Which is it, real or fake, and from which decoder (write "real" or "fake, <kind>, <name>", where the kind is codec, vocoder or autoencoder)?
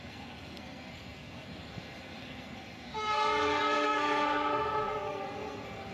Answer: fake, codec, SNAC